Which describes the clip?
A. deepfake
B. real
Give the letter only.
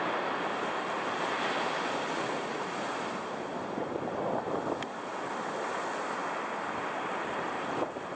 B